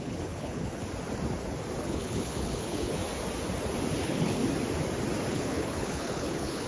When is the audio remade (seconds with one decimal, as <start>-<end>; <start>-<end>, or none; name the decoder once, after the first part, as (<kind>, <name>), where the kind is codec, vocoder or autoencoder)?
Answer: 0.0-0.8 (codec, HILCodec); 1.8-3.0; 4.0-4.4; 5.3-6.7